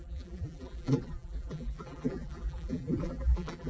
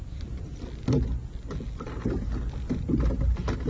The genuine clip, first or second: second